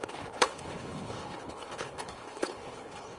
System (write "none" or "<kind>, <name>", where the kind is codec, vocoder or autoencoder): codec, HILCodec